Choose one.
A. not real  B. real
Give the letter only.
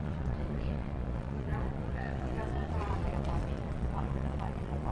A